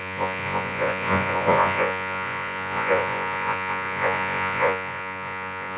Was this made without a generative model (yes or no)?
no